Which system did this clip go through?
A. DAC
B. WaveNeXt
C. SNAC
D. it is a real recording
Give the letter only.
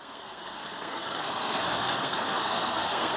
C